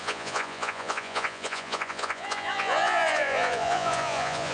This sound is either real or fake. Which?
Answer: fake